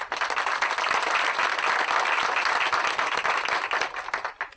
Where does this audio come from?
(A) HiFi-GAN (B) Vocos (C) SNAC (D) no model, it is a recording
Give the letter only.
D